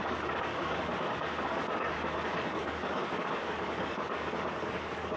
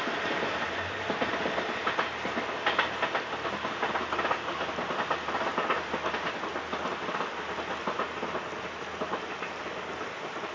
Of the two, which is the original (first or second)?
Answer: second